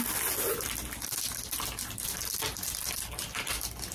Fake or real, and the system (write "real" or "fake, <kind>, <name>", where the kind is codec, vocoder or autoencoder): real